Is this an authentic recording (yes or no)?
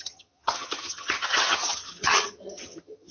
no